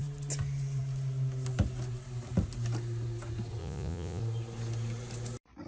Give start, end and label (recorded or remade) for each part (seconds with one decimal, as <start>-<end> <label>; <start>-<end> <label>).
0.0-3.6 recorded; 3.6-4.2 remade; 4.2-5.7 recorded